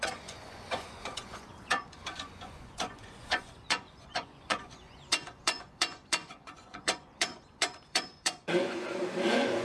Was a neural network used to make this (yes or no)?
yes